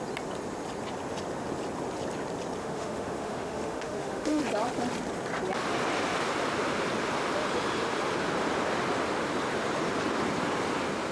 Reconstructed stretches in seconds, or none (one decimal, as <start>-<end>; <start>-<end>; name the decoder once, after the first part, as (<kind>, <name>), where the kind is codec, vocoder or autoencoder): 2.6-4.4 (autoencoder, DAC-VAE)